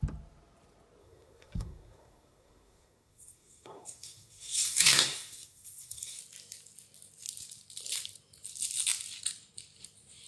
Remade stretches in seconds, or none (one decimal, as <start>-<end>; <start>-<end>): 1.0-6.2